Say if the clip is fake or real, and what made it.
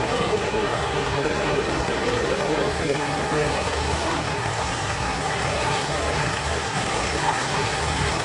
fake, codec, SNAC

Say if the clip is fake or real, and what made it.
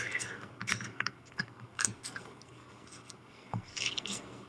fake, codec, SNAC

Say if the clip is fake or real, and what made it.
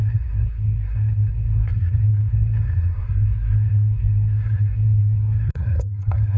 fake, codec, SNAC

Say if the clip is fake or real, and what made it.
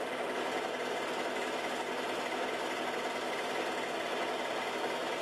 real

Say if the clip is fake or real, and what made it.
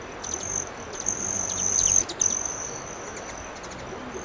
real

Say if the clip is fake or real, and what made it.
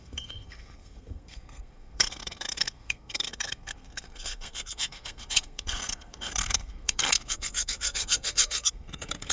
fake, codec, SNAC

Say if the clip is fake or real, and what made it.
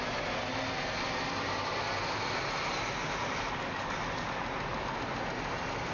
real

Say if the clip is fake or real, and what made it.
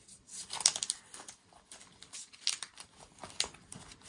real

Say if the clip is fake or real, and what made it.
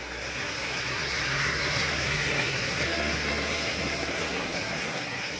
fake, codec, SNAC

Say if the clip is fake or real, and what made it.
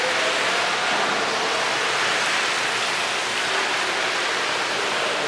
real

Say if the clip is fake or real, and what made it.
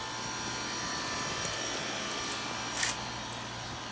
real